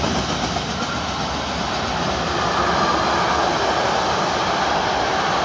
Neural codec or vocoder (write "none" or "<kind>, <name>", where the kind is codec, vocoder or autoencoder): none